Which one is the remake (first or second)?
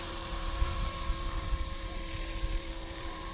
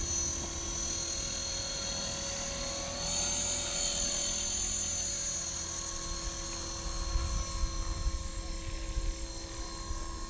first